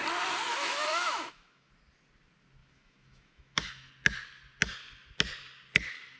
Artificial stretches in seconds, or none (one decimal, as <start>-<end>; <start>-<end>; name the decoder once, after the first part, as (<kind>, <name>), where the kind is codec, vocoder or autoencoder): 0.5-1.7 (autoencoder, DAC-VAE); 2.6-3.9